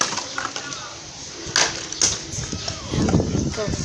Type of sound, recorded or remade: recorded